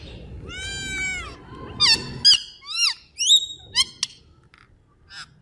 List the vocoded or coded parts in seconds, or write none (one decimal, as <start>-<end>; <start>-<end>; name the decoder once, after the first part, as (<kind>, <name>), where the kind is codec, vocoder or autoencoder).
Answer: none